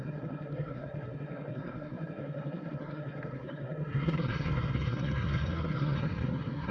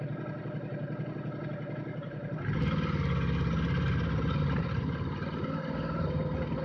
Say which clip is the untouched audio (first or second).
second